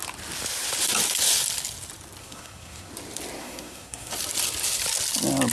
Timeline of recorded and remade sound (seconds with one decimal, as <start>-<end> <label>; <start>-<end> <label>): 0.0-2.2 recorded; 2.2-2.9 remade; 2.9-3.4 recorded; 3.4-4.1 remade; 4.1-5.5 recorded